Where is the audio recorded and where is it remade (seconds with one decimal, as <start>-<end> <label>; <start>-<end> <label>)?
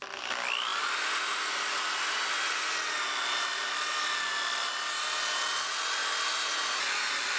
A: 0.0-7.4 recorded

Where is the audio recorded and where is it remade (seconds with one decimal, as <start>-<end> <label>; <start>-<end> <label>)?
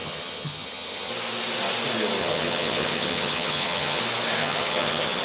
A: 0.0-1.1 remade; 1.1-2.2 recorded; 2.2-4.0 remade; 4.0-4.4 recorded; 4.4-5.2 remade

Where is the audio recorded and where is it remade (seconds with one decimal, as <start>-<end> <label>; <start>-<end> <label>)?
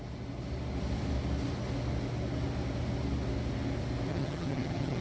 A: 0.0-4.1 recorded; 4.1-5.0 remade